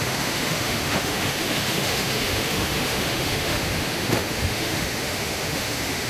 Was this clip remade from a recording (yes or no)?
yes